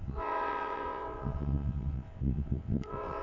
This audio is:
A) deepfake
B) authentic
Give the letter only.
A